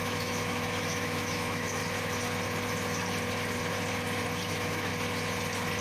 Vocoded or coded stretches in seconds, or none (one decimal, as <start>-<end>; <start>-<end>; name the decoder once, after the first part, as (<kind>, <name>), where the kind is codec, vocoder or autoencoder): 0.0-1.8 (autoencoder, DAC-VAE); 4.5-4.9